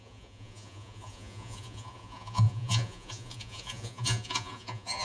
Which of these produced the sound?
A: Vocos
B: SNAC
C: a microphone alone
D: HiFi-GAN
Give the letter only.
A